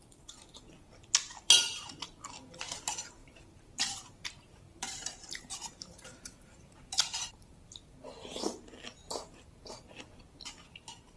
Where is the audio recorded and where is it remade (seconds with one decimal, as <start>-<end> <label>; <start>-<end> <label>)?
0.0-3.2 recorded; 3.2-7.7 remade; 7.7-9.0 recorded; 9.0-10.1 remade; 10.1-11.2 recorded